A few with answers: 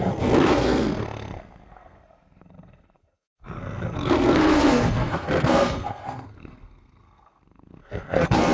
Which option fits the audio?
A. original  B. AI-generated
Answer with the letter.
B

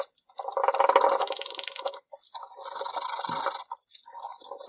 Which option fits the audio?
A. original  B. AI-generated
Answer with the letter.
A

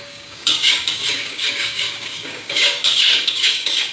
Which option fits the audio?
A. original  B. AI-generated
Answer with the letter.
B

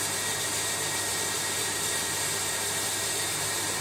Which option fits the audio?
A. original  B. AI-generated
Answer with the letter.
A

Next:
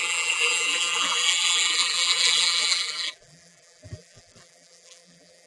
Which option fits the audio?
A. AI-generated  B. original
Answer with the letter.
A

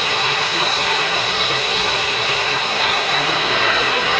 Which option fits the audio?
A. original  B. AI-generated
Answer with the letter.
B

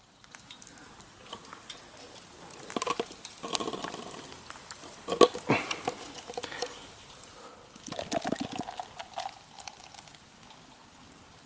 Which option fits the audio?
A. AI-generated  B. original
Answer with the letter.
B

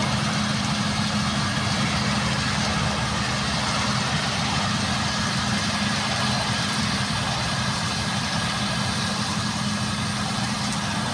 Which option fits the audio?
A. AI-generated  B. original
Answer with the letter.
B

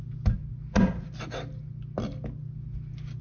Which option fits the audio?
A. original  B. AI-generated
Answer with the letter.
A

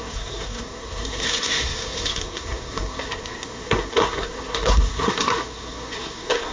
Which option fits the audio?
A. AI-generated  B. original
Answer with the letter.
A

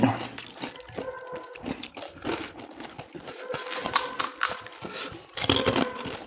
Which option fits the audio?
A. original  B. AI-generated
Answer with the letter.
A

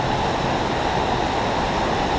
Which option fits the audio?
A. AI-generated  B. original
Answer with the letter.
B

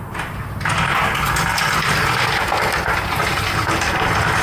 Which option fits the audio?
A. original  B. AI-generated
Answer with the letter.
A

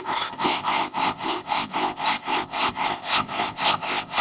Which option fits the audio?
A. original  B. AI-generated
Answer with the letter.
B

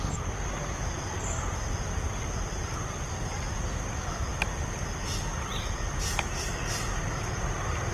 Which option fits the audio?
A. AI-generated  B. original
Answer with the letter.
B